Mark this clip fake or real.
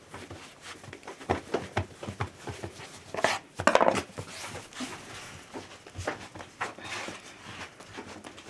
real